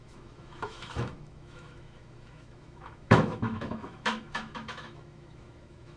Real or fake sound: fake